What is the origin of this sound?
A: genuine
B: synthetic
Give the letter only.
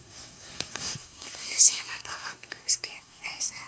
B